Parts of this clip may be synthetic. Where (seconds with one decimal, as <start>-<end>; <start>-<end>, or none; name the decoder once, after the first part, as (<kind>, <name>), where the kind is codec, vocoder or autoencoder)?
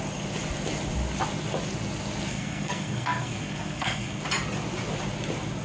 2.3-4.2 (codec, SNAC)